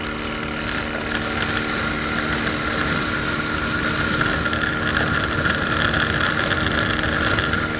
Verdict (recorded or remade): recorded